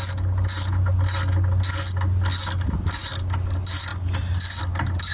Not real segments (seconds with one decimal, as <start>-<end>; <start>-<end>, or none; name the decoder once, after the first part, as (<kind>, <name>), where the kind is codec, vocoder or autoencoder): none